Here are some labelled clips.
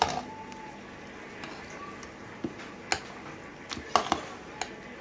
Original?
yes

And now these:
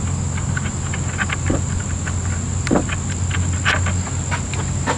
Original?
yes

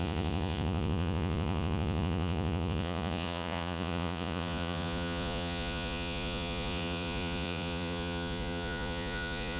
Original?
no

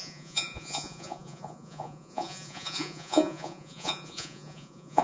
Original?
no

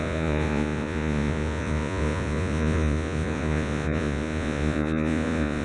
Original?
no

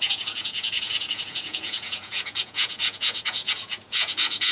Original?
no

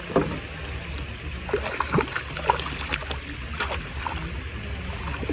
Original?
yes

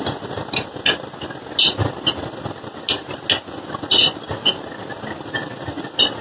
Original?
yes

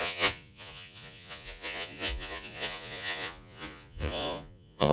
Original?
no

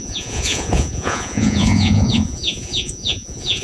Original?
no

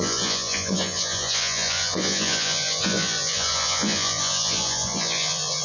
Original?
no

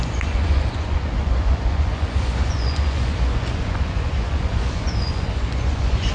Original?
no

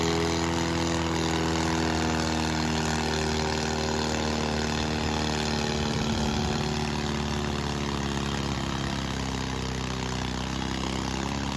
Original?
yes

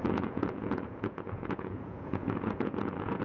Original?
no